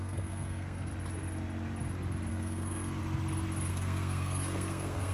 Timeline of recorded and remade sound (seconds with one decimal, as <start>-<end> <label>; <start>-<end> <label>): 0.0-0.9 remade; 0.9-2.3 recorded; 2.3-3.0 remade; 3.0-3.7 recorded; 3.7-5.1 remade